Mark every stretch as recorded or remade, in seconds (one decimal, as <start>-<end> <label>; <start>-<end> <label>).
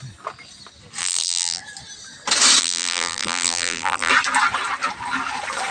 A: 0.0-1.0 recorded; 1.0-1.6 remade; 1.6-2.6 recorded; 2.6-4.1 remade; 4.1-5.7 recorded